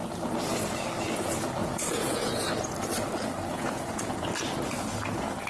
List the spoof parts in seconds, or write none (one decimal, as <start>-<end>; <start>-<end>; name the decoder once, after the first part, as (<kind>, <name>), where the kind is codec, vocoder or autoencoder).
1.6-2.4 (vocoder, Vocos); 3.5-4.1